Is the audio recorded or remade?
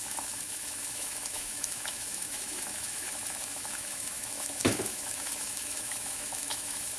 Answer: remade